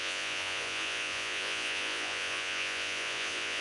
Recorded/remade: remade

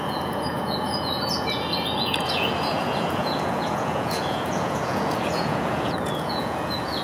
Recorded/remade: remade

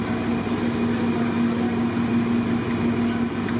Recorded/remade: recorded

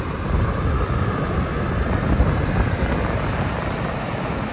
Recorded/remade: recorded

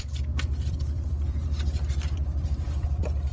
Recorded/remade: remade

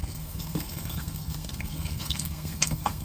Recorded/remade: remade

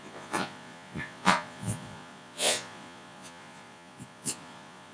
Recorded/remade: remade